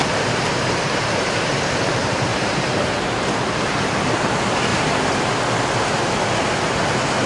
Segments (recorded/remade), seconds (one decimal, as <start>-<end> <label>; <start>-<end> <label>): 0.0-0.5 recorded; 0.5-1.7 remade; 1.7-2.3 recorded; 2.3-3.8 remade; 3.8-4.7 recorded; 4.7-5.3 remade; 5.3-7.3 recorded